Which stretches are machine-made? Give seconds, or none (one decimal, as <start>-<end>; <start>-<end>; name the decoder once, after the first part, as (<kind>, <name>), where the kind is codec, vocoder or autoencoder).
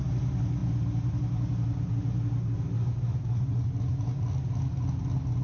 none